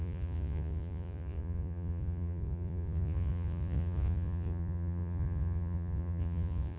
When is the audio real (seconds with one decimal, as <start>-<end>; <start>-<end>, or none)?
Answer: none